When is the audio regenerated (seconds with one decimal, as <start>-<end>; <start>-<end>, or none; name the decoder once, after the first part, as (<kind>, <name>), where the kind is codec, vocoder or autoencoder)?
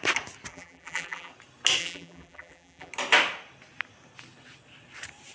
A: 0.5-1.3 (vocoder, BigVGAN v2); 1.8-2.9